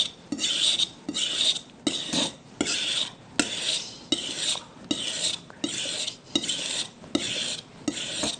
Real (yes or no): yes